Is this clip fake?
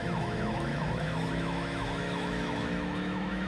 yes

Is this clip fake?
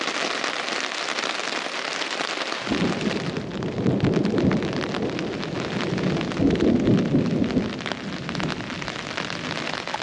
no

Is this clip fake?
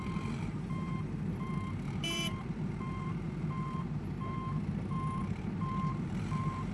yes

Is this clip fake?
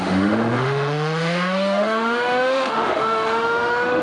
yes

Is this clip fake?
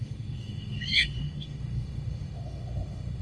yes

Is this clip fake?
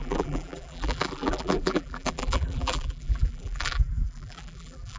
yes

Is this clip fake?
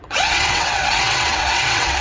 yes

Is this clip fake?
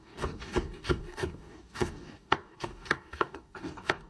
yes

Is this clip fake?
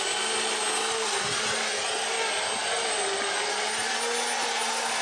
no